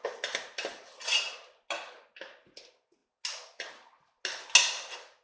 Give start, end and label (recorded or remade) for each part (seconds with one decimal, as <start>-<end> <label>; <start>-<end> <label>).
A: 0.0-5.2 recorded